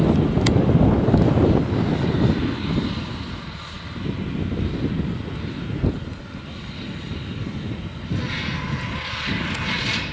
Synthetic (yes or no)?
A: no